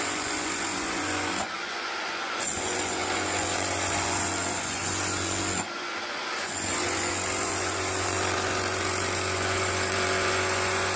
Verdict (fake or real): fake